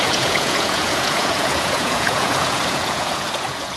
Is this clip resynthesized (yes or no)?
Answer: yes